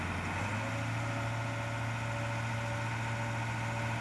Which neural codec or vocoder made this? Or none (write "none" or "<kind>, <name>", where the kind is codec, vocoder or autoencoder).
none